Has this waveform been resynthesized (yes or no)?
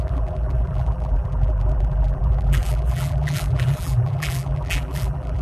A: yes